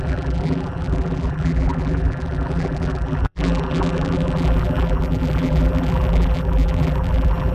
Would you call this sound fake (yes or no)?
yes